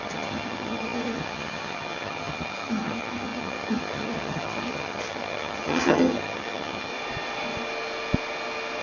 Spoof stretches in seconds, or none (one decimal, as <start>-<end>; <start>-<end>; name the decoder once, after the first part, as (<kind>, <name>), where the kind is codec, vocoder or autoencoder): 0.0-6.9 (vocoder, HiFi-GAN)